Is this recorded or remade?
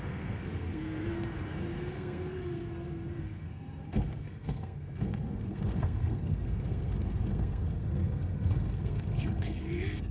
remade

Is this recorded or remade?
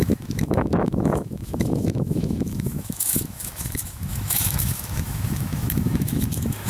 remade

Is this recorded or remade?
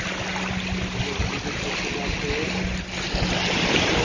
recorded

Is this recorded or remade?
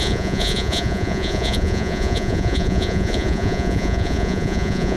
remade